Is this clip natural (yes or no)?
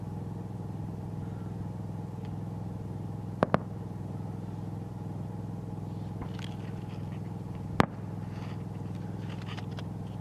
yes